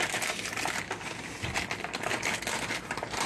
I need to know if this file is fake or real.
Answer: real